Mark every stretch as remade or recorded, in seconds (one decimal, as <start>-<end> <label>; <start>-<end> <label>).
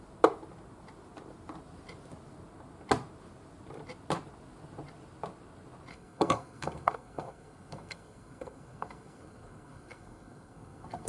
0.0-5.9 recorded; 5.9-11.1 remade